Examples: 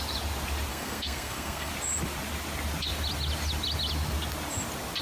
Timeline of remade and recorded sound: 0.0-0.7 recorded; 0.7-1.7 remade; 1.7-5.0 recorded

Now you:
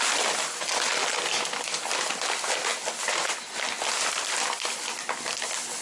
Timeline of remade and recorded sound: 0.0-5.8 recorded

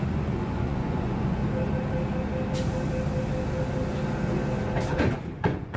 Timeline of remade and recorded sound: 0.0-1.4 remade; 1.4-4.9 recorded; 4.9-5.8 remade